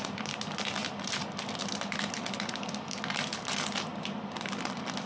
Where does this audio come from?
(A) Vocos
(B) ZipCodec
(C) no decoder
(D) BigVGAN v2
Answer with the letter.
C